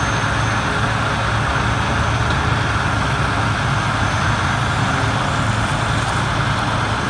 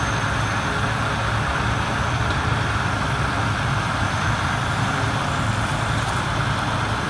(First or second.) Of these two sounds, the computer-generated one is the second